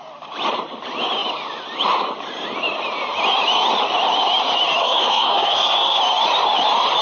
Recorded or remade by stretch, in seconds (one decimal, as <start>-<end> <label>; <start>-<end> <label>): 0.0-4.8 recorded; 4.8-6.0 remade; 6.0-7.0 recorded